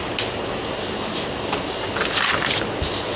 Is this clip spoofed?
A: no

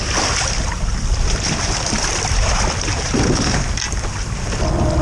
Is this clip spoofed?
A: yes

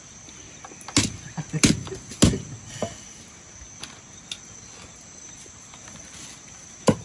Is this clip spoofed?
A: no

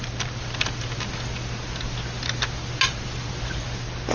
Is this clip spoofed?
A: no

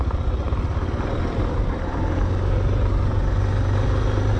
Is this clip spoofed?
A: no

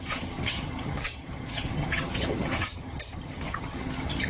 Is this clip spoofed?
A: yes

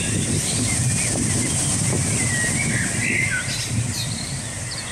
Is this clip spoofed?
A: no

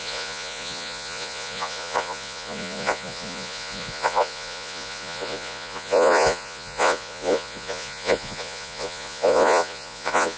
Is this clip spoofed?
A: yes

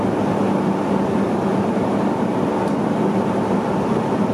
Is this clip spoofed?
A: no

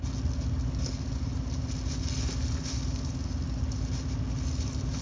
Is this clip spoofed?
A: no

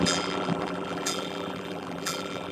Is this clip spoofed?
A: yes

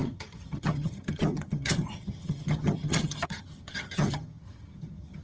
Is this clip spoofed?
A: yes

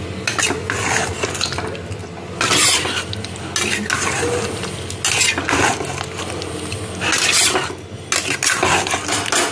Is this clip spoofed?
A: no